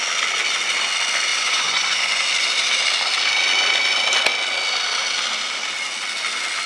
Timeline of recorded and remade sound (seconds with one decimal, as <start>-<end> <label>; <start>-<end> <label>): 0.0-1.3 recorded; 1.3-2.2 remade; 2.2-6.7 recorded